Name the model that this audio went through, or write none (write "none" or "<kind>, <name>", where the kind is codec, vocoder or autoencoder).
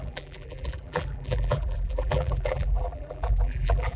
vocoder, BigVGAN v2